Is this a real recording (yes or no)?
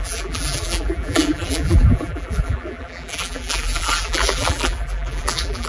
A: no